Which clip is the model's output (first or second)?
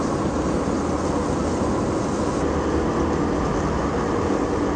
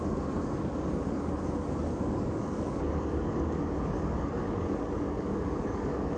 second